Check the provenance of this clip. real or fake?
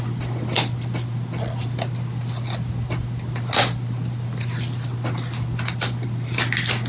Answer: real